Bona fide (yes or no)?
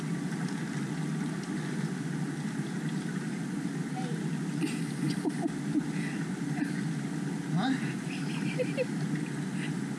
yes